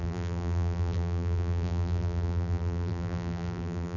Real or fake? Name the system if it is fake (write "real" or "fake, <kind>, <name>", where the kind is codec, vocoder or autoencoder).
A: fake, vocoder, BigVGAN v2